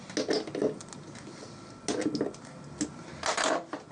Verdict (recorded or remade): recorded